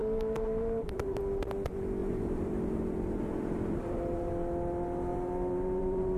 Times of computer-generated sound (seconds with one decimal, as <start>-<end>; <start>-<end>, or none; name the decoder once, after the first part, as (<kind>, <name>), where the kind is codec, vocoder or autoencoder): 0.0-1.2 (vocoder, BigVGAN v2); 2.0-4.3; 5.1-6.2